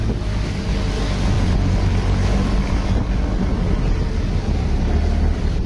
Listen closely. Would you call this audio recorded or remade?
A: recorded